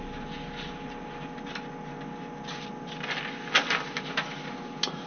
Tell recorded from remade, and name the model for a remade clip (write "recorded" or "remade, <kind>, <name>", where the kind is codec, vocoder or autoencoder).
recorded